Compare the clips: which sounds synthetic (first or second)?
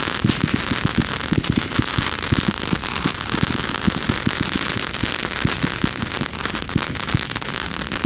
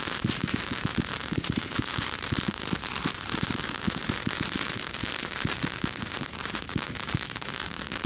second